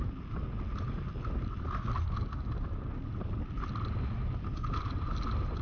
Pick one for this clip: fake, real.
real